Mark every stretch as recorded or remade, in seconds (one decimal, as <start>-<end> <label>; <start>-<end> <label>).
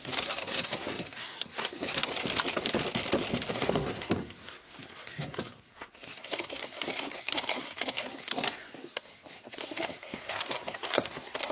0.0-2.1 remade; 2.1-3.5 recorded; 3.5-11.5 remade